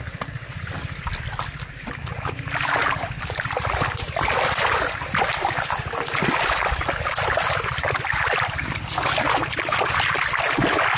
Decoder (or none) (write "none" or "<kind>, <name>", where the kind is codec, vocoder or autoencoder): none